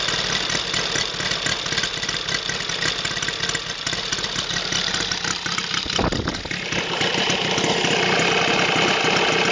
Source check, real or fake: real